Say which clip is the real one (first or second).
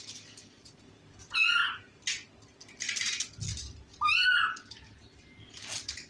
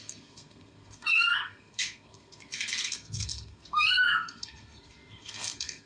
first